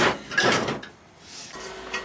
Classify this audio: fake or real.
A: real